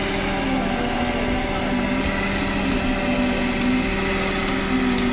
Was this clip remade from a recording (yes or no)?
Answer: no